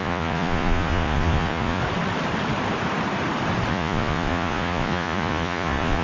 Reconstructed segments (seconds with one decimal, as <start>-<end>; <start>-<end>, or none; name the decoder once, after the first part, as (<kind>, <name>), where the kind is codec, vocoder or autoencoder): 0.0-1.8 (vocoder, Vocos); 3.7-6.0